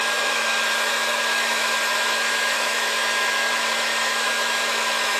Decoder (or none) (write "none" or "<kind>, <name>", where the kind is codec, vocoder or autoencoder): autoencoder, DAC-VAE